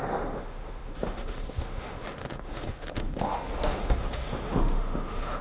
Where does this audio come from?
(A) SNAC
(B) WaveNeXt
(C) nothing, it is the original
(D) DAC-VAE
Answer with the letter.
D